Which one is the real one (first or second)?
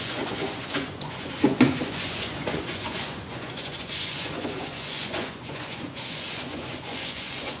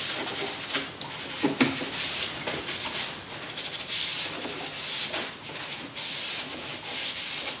second